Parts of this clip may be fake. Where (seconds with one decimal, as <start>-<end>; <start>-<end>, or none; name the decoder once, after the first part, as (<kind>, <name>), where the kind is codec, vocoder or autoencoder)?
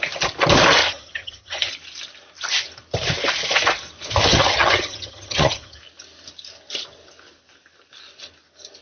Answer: 0.8-1.7 (vocoder, HiFi-GAN); 4.3-5.8